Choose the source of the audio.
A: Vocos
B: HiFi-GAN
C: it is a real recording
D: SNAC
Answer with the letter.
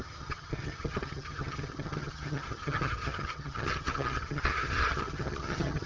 B